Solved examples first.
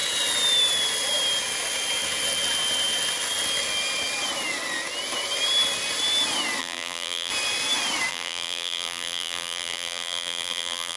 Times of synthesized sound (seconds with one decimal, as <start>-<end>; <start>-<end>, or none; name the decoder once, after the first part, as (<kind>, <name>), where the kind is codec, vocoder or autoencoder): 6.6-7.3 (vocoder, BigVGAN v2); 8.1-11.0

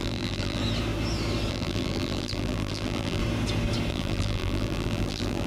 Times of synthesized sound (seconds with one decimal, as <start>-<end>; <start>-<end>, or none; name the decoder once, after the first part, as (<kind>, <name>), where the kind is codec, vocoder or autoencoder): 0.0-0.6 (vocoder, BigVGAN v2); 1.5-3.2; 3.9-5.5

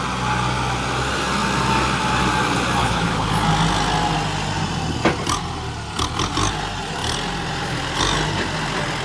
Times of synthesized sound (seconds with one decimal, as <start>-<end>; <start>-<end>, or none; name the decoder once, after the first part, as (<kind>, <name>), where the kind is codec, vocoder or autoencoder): 2.8-3.3 (codec, HILCodec)